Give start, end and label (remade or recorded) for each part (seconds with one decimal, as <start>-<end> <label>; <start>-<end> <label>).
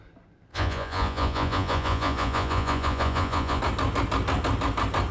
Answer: 0.0-0.5 recorded; 0.5-3.6 remade; 3.6-5.1 recorded